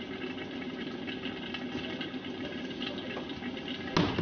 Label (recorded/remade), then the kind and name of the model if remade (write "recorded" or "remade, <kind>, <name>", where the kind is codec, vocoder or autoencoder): recorded